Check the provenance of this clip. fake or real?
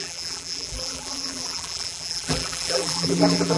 fake